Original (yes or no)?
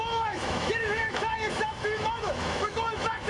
no